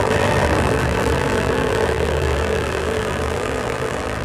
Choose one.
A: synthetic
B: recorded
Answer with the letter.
A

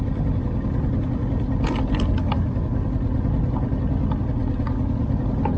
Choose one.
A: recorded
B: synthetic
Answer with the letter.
A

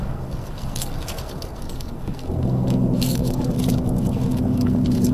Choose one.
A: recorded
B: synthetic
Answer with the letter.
B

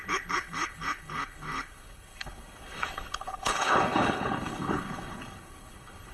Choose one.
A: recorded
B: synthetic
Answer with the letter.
B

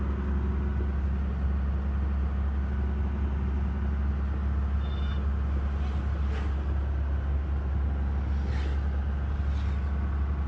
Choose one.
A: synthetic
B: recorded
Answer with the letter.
B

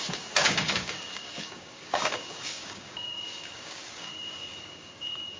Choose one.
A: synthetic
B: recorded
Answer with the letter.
A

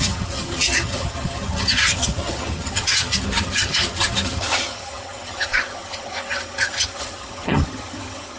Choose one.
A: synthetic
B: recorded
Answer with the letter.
A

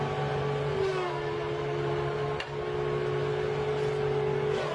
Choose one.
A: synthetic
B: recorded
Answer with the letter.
B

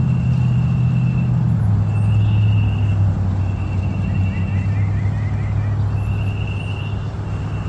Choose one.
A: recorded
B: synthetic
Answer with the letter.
A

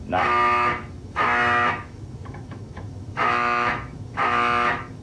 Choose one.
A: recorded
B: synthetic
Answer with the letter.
B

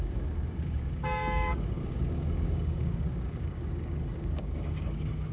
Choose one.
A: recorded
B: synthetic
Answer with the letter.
B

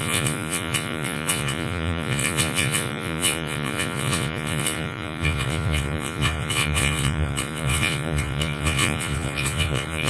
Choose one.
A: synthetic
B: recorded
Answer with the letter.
A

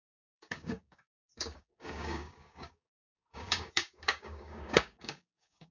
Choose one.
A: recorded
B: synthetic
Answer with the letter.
B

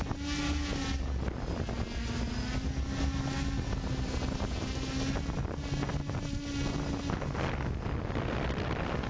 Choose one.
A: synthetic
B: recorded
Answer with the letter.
B